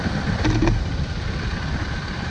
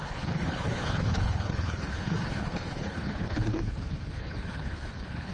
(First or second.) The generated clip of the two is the second